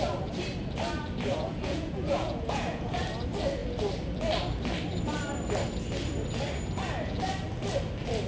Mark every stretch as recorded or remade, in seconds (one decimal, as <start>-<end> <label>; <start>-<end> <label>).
0.0-1.3 recorded; 1.3-3.0 remade; 3.0-8.3 recorded